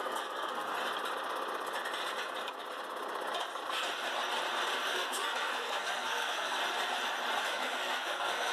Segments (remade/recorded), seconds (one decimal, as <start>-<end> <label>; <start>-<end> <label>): 0.0-0.7 remade; 0.7-4.9 recorded; 4.9-6.6 remade; 6.6-7.4 recorded; 7.4-8.5 remade